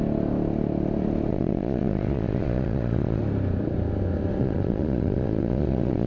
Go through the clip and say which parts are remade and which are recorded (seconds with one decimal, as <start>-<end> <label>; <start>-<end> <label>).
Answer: 0.0-1.3 recorded; 1.3-3.2 remade; 3.2-4.4 recorded; 4.4-6.1 remade